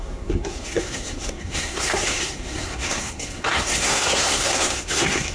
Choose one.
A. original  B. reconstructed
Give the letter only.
B